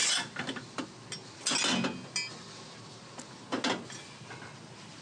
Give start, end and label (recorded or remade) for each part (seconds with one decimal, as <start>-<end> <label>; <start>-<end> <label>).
0.0-5.0 recorded